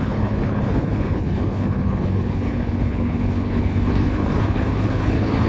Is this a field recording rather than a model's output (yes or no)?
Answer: no